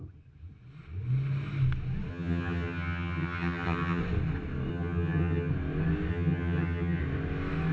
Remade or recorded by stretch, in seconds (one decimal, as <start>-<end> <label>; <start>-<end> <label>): 0.0-2.1 recorded; 2.1-4.0 remade; 4.0-4.7 recorded; 4.7-5.5 remade; 5.5-6.1 recorded; 6.1-7.0 remade; 7.0-7.7 recorded